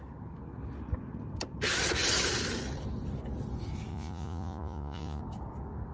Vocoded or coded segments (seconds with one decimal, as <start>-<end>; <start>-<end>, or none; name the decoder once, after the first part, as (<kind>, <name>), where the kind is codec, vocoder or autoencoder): 3.9-5.2 (vocoder, Vocos)